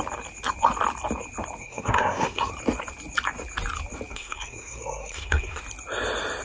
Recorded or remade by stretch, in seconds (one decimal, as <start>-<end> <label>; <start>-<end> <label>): 0.0-1.6 recorded; 1.6-2.5 remade; 2.5-4.1 recorded; 4.1-5.6 remade; 5.6-6.4 recorded